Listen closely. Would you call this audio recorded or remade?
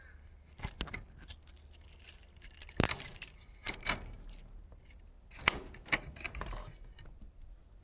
recorded